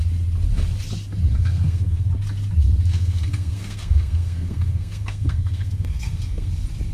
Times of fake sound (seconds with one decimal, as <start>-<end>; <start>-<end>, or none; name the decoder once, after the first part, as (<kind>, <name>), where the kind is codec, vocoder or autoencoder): 1.3-2.1 (codec, SNAC); 2.9-6.5

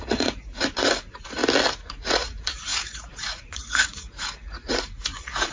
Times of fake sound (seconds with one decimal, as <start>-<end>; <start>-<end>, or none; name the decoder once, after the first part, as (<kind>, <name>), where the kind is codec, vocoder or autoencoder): 0.0-1.4 (vocoder, Vocos); 1.9-5.5

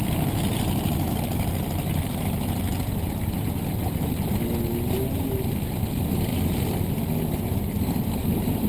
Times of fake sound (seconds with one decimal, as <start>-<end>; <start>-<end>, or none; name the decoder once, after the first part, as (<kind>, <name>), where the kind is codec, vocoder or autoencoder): none